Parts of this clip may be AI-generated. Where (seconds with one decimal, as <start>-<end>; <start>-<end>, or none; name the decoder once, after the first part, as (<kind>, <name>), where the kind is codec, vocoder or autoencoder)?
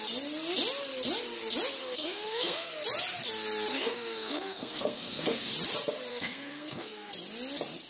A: 1.8-2.7 (codec, SNAC); 3.7-5.5; 6.1-7.1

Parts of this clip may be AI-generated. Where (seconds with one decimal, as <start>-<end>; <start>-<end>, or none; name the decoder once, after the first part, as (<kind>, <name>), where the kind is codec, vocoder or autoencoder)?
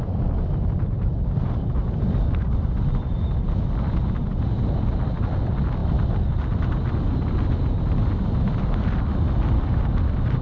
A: none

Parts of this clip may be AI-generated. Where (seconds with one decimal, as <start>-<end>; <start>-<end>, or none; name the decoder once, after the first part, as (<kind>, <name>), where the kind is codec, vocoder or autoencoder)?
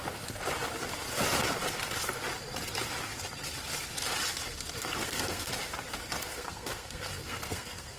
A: 5.0-5.5 (codec, SNAC); 6.3-8.0